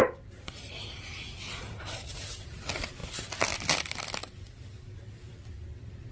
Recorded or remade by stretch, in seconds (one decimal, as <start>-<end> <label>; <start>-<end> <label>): 0.0-6.1 recorded